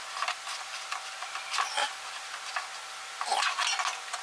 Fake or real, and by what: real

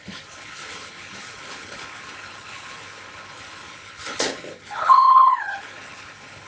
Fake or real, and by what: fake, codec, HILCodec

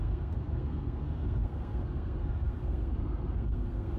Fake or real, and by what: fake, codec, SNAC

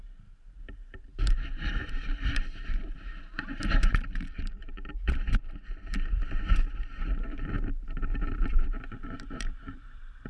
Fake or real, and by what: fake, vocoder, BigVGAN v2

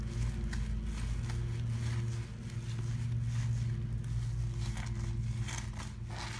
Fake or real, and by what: real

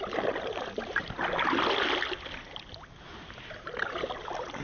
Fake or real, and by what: real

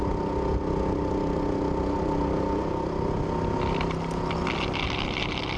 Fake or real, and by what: real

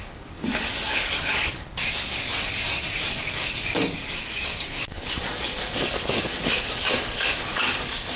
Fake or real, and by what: fake, codec, DAC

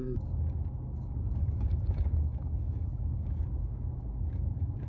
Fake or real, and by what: fake, codec, DAC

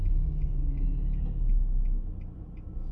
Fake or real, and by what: real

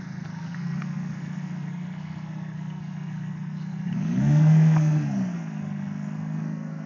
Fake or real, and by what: fake, codec, SNAC